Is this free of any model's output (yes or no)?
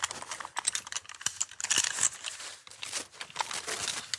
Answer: yes